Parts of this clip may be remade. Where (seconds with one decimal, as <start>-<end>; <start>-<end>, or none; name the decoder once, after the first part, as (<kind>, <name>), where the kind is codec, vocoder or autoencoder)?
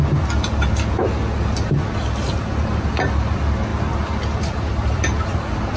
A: none